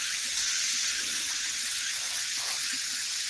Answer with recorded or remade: remade